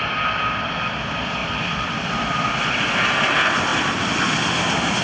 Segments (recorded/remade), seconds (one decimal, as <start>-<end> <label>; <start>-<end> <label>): 0.0-1.4 recorded; 1.4-2.8 remade; 2.8-3.7 recorded; 3.7-4.4 remade; 4.4-5.0 recorded